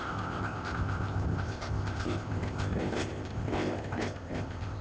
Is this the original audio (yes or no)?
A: no